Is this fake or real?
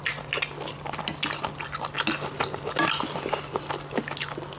real